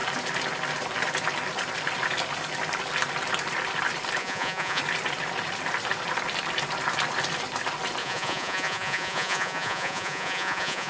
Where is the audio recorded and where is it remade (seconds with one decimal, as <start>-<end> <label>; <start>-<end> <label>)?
0.0-4.2 recorded; 4.2-4.8 remade; 4.8-8.0 recorded; 8.0-10.9 remade